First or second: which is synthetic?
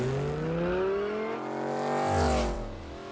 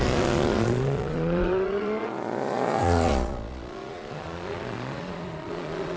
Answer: second